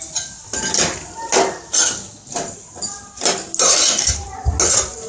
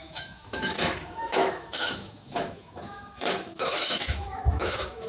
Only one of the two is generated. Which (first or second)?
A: second